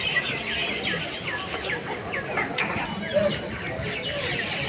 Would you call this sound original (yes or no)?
yes